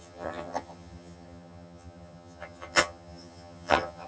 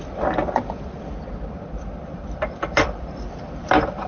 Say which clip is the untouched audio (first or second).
second